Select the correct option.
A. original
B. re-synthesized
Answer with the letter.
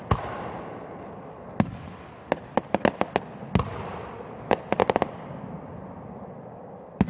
B